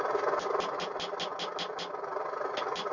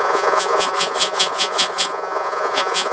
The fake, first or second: second